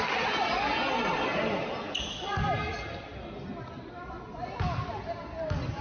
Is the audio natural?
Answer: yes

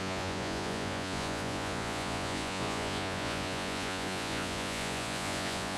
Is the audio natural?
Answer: no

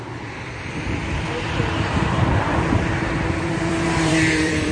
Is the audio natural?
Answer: no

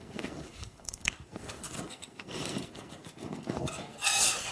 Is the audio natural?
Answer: no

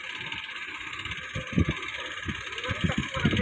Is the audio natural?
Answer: yes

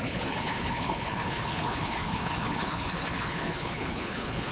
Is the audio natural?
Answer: no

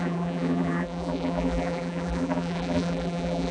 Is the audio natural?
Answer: no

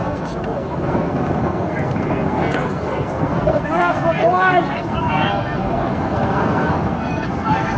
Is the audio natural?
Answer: no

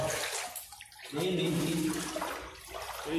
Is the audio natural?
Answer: yes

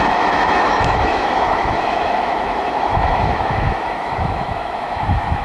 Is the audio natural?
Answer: no